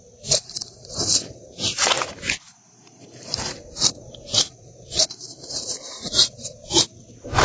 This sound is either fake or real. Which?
fake